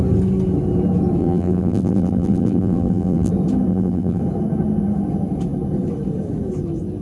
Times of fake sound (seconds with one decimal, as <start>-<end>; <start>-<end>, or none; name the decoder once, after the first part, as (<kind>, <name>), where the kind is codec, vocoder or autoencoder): 1.2-3.3 (vocoder, BigVGAN v2); 3.7-4.2